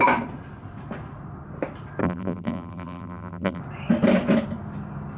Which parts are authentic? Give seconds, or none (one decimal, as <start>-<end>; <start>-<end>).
0.0-2.0; 3.6-5.2